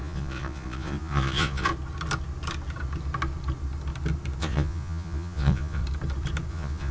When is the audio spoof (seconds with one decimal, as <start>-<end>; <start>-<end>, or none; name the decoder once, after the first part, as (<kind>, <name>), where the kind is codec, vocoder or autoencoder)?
0.0-1.7 (vocoder, Vocos); 4.4-5.8; 6.5-6.9